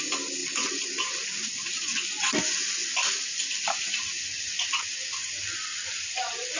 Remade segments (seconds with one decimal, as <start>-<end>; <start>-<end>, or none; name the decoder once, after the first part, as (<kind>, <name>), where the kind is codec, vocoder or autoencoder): none